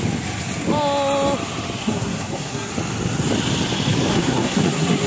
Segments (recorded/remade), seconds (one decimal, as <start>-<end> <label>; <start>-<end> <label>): 0.0-1.8 recorded; 1.8-2.7 remade; 2.7-4.1 recorded; 4.1-5.1 remade

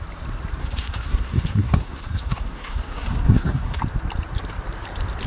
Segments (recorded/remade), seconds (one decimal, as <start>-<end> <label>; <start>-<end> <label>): 0.0-0.6 recorded; 0.6-3.8 remade; 3.8-5.3 recorded

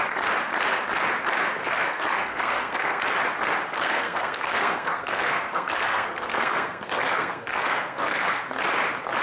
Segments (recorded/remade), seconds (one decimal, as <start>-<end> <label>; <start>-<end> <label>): 0.0-1.6 recorded; 1.6-3.0 remade; 3.0-3.7 recorded; 3.7-8.4 remade; 8.4-9.2 recorded

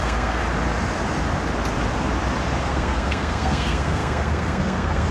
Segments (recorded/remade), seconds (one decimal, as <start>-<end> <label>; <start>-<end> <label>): 0.0-0.4 remade; 0.4-2.6 recorded; 2.6-5.1 remade

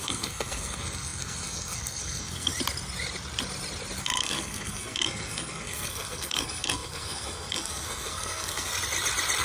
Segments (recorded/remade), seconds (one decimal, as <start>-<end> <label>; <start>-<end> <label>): 0.0-2.5 remade; 2.5-4.0 recorded; 4.0-8.7 remade; 8.7-9.4 recorded

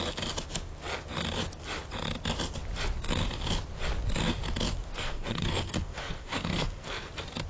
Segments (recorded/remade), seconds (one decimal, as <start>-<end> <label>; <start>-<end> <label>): 0.0-4.9 recorded; 4.9-7.1 remade; 7.1-7.5 recorded

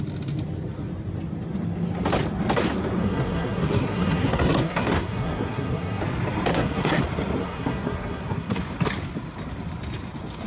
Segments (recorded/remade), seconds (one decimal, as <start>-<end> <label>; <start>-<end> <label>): 0.0-3.0 recorded; 3.0-6.0 remade; 6.0-6.5 recorded; 6.5-7.0 remade; 7.0-7.4 recorded; 7.4-8.6 remade; 8.6-10.5 recorded